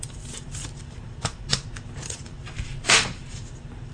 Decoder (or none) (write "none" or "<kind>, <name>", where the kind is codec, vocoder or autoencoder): vocoder, BigVGAN v2